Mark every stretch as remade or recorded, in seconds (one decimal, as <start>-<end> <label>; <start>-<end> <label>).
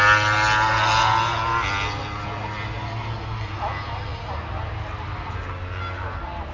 0.0-6.5 recorded